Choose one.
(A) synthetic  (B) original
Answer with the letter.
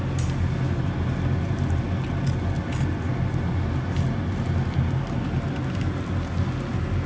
B